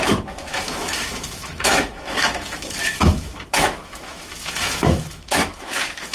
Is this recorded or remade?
remade